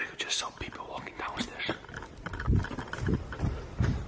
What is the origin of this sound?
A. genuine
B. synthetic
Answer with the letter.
A